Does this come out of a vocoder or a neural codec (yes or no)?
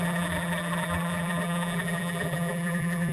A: yes